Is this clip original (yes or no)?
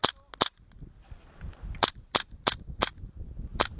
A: yes